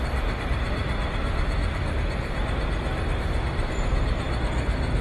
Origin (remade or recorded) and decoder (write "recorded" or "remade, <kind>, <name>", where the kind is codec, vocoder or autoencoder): remade, vocoder, BigVGAN v2